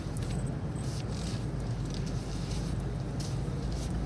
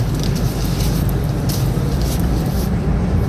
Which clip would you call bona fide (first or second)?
first